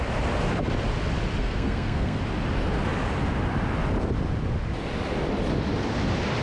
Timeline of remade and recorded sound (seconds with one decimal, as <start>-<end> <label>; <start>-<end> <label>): 0.0-1.4 recorded; 1.4-2.2 remade; 2.2-6.4 recorded